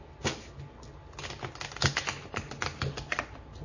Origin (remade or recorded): recorded